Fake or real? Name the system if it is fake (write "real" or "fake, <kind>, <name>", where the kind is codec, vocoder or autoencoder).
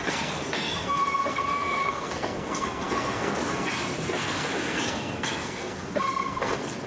fake, codec, SNAC